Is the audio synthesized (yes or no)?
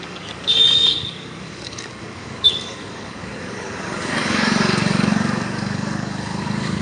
yes